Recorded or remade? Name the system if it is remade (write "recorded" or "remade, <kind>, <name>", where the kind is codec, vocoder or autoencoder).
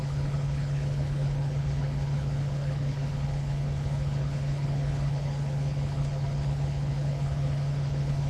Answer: remade, codec, HILCodec